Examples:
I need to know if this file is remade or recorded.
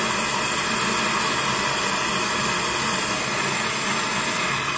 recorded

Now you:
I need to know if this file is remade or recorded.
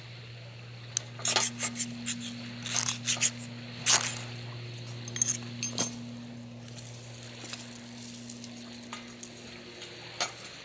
recorded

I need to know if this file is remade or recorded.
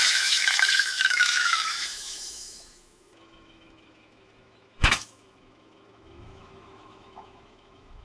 remade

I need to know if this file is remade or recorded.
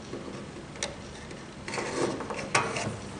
recorded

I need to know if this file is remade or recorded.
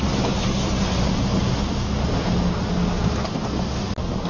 recorded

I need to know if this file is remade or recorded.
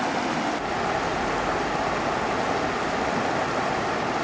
recorded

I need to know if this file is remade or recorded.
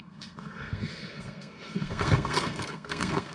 remade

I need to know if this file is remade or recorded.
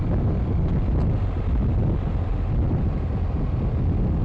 recorded